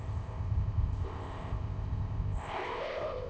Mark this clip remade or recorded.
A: remade